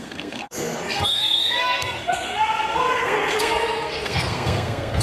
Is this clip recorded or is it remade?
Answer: remade